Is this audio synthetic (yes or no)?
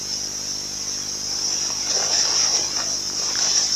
no